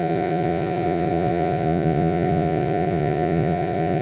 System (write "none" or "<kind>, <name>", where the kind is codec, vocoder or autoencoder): vocoder, Vocos